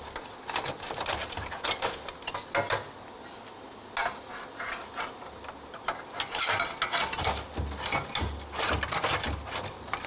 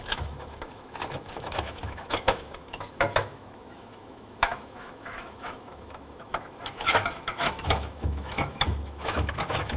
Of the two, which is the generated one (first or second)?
second